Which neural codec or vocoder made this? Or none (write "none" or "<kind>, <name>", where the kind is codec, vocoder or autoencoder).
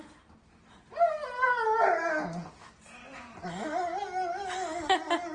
none